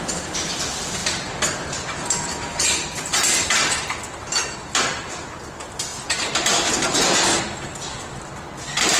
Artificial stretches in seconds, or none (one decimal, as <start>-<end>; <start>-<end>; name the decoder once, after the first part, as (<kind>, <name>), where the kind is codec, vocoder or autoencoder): 1.0-5.5 (vocoder, BigVGAN v2)